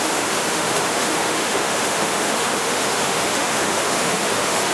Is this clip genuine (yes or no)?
no